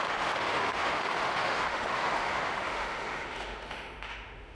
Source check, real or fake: fake